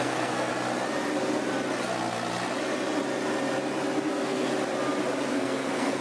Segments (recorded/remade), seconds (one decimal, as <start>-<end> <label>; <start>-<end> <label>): 0.0-0.5 remade; 0.5-4.1 recorded; 4.1-4.5 remade; 4.5-5.3 recorded; 5.3-6.0 remade